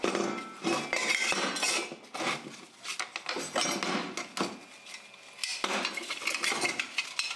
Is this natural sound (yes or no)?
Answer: yes